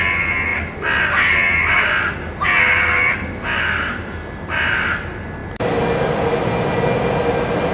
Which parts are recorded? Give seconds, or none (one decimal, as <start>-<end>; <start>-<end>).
0.0-7.7